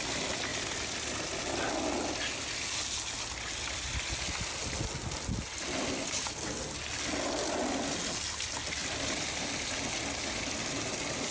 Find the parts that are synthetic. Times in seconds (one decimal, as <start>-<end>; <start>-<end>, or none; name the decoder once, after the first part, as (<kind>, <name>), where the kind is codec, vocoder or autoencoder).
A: none